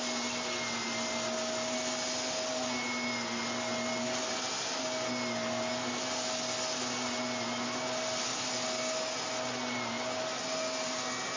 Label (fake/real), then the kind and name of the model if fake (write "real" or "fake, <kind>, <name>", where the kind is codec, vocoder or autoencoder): real